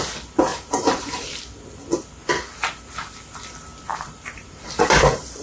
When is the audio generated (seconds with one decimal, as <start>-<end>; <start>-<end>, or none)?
0.5-1.4; 3.9-5.4